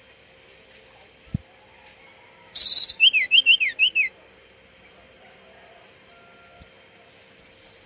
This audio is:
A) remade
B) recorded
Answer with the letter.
B